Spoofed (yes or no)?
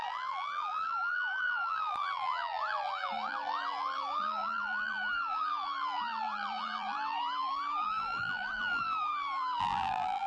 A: yes